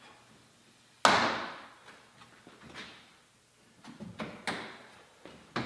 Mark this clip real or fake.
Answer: real